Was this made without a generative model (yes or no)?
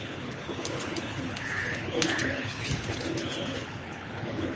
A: no